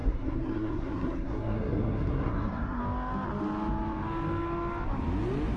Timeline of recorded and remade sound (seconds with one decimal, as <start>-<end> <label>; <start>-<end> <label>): 0.0-2.8 remade; 2.8-5.6 recorded